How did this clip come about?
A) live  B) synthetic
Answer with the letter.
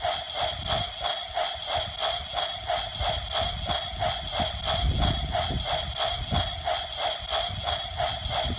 A